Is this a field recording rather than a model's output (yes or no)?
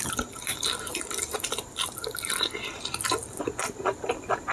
yes